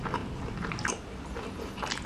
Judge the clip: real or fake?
real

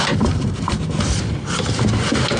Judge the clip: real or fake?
real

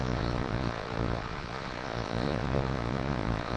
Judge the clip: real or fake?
fake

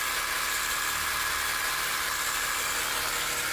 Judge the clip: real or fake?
real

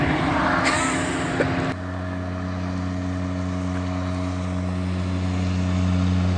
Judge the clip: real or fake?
real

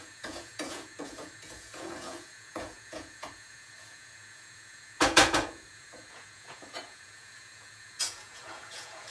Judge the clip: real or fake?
fake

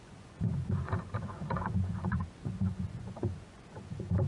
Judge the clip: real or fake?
fake